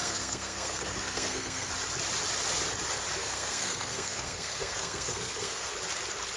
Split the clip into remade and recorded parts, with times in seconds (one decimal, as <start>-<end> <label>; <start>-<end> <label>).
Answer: 0.0-1.7 remade; 1.7-3.2 recorded; 3.2-5.7 remade; 5.7-6.4 recorded